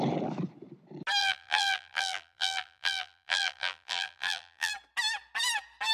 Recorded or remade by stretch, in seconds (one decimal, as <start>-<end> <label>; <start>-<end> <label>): 0.0-1.2 recorded; 1.2-4.7 remade; 4.7-5.9 recorded